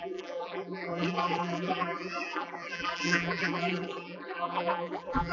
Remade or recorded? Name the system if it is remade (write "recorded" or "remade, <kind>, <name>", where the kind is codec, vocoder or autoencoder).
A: remade, vocoder, BigVGAN v2